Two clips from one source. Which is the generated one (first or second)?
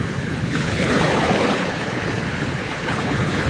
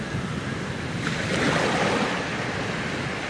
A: first